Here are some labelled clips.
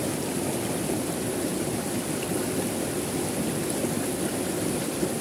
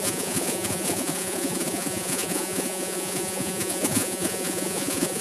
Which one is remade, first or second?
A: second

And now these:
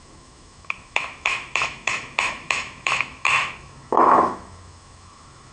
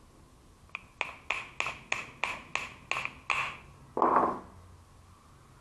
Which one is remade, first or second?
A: first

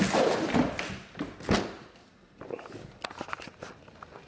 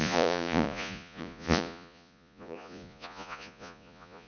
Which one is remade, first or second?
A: second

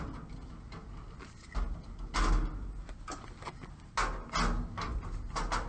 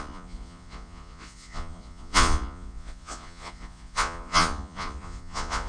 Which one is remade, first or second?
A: second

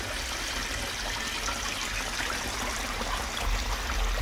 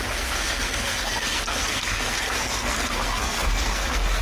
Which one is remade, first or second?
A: second